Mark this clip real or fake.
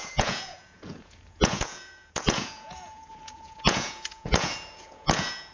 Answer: fake